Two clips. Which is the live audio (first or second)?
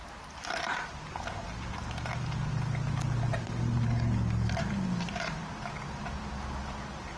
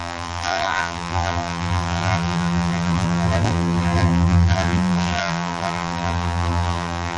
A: first